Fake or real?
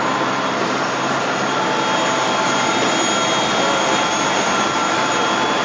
real